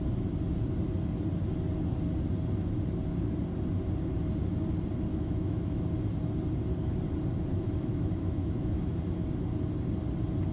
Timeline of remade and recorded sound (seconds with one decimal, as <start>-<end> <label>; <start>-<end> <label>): 0.0-5.1 recorded; 5.1-5.8 remade; 5.8-7.5 recorded; 7.5-9.0 remade; 9.0-10.5 recorded

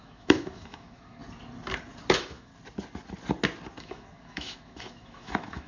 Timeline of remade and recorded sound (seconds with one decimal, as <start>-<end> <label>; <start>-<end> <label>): 0.0-1.2 remade; 1.2-2.1 recorded; 2.1-2.5 remade; 2.5-3.8 recorded; 3.8-5.7 remade

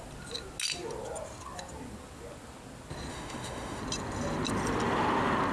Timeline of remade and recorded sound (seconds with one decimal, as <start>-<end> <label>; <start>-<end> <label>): 0.0-3.1 recorded; 3.1-3.8 remade; 3.8-5.5 recorded

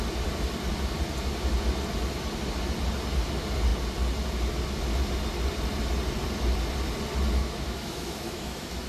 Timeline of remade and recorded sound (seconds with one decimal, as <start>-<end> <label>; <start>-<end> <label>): 0.0-7.4 recorded; 7.4-8.9 remade

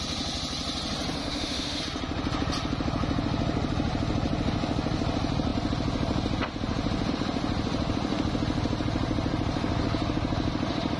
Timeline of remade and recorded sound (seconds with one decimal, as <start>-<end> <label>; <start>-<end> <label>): 0.0-1.2 recorded; 1.2-1.8 remade; 1.8-11.0 recorded

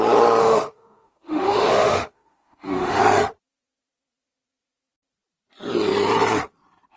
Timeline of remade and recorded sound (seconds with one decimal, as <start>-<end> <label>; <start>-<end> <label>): 0.0-0.4 recorded; 0.4-3.0 remade; 3.0-7.0 recorded

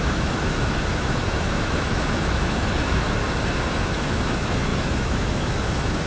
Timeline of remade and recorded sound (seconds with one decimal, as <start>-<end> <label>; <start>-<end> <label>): 0.0-3.2 remade; 3.2-3.7 recorded; 3.7-6.1 remade